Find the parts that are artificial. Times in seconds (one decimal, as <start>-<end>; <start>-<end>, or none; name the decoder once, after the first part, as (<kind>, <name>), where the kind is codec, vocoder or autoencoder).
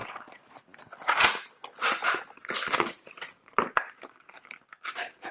none